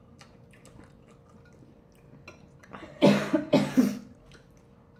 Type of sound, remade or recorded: recorded